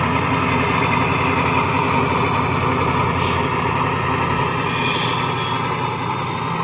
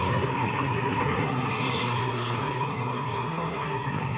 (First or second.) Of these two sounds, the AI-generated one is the second